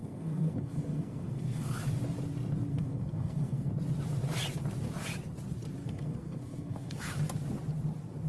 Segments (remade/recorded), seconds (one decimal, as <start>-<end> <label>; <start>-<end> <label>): 0.0-1.8 remade; 1.8-2.7 recorded; 2.7-3.7 remade; 3.7-5.8 recorded; 5.8-7.1 remade; 7.1-8.3 recorded